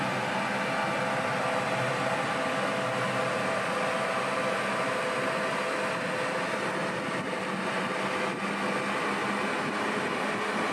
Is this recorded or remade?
recorded